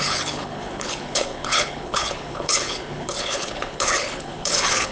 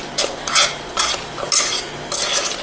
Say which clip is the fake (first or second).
first